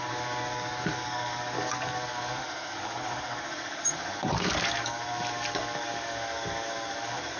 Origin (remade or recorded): remade